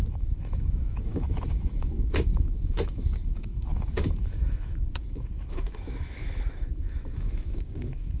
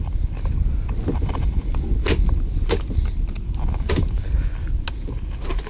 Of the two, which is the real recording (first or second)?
second